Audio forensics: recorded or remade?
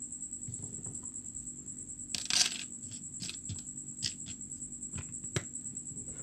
recorded